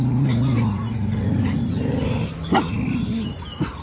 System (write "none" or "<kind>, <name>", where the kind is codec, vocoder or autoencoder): none